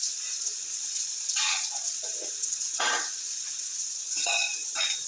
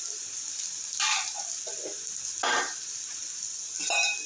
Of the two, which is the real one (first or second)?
second